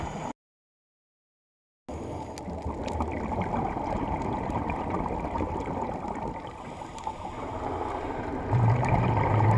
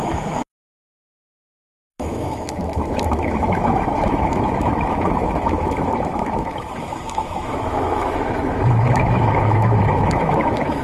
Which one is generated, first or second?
second